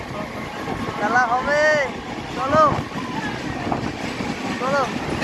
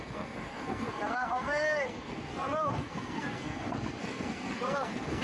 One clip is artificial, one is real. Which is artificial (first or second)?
second